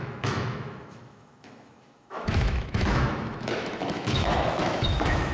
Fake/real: fake